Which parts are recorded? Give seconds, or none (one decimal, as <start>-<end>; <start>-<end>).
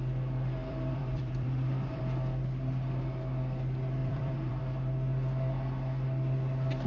0.0-0.6; 2.0-4.0; 4.6-6.9